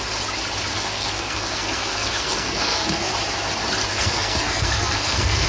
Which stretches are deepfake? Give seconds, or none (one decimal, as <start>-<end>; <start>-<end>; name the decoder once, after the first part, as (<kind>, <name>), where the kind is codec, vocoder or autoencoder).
0.7-3.1 (codec, SNAC); 3.9-5.5